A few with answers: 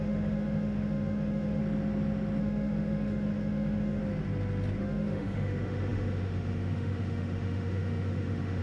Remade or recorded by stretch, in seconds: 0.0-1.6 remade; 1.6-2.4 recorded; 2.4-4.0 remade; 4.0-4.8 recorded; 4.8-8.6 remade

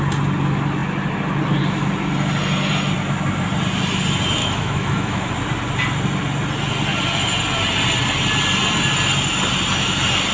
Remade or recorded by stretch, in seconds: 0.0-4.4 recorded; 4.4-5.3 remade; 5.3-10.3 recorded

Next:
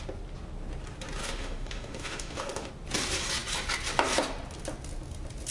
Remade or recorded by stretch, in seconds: 0.0-1.2 recorded; 1.2-2.7 remade; 2.7-5.5 recorded

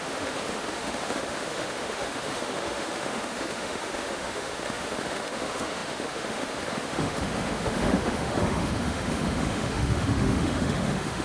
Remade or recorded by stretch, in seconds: 0.0-11.2 remade

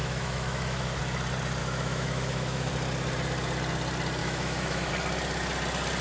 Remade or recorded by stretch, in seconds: 0.0-1.0 remade; 1.0-1.6 recorded; 1.6-2.7 remade; 2.7-4.2 recorded; 4.2-4.9 remade; 4.9-6.0 recorded

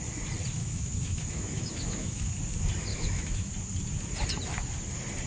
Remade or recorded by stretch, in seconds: 0.0-0.6 recorded; 0.6-2.3 remade; 2.3-2.9 recorded; 2.9-3.5 remade; 3.5-5.3 recorded

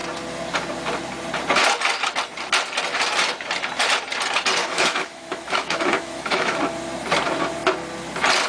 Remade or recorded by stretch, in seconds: 0.0-4.6 recorded; 4.6-6.6 remade; 6.6-8.5 recorded

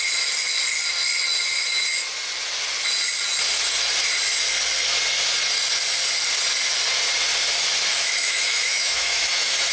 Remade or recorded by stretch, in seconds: 0.0-7.9 recorded; 7.9-9.7 remade